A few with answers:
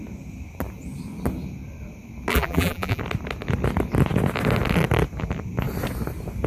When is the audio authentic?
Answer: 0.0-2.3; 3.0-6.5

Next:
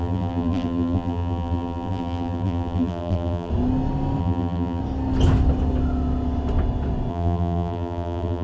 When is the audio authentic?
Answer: 3.5-4.2; 4.8-7.1